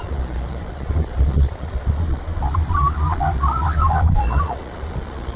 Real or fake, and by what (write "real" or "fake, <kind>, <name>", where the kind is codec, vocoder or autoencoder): fake, vocoder, Vocos